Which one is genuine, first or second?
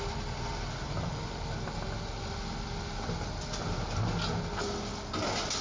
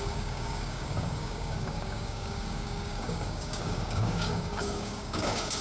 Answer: first